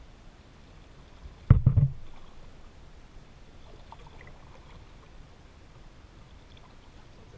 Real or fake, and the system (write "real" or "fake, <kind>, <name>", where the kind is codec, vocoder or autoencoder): real